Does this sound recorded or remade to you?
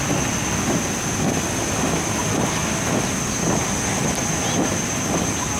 recorded